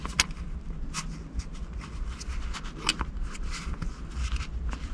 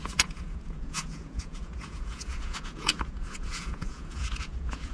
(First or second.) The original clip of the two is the first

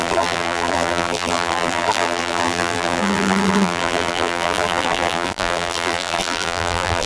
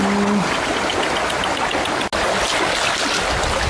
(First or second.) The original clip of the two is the second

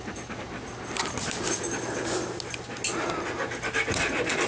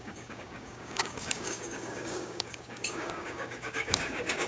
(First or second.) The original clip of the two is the first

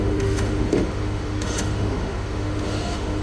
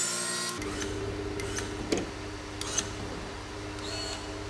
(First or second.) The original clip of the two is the second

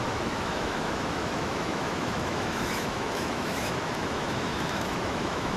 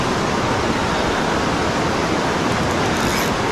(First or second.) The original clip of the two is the second